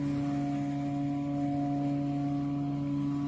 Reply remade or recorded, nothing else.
recorded